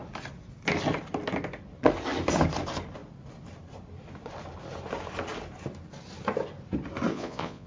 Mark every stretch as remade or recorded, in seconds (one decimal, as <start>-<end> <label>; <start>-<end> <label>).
0.0-7.1 recorded; 7.1-7.7 remade

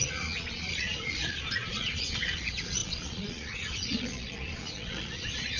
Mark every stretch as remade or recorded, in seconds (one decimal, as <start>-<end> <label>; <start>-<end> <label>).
0.0-5.6 remade

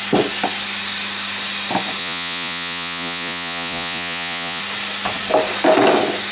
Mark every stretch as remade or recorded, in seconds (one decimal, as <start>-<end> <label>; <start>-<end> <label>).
0.0-2.0 recorded; 2.0-4.6 remade; 4.6-6.3 recorded

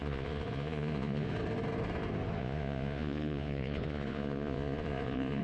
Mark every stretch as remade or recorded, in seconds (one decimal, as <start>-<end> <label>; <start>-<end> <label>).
0.0-1.3 remade; 1.3-2.4 recorded; 2.4-5.4 remade

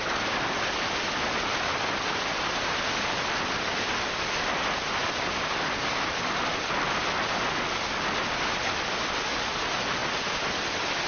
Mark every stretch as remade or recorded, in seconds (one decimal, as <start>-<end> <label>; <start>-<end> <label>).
0.0-11.1 recorded

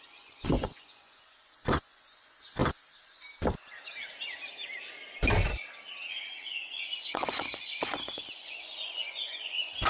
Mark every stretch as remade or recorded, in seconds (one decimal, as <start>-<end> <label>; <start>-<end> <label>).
0.0-2.6 remade; 2.6-6.1 recorded; 6.1-9.9 remade

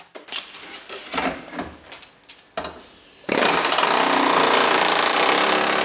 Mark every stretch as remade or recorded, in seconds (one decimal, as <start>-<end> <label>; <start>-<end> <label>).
0.0-5.8 recorded